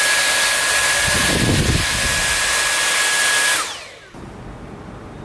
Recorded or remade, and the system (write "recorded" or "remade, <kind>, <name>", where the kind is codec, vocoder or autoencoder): recorded